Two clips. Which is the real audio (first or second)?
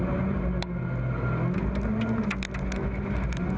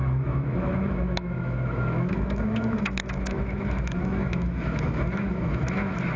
first